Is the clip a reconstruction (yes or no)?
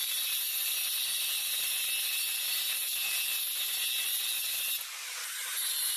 no